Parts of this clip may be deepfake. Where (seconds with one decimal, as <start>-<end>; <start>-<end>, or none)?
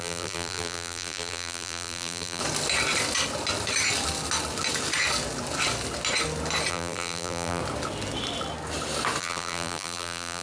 0.0-2.4; 6.7-7.6; 9.2-10.4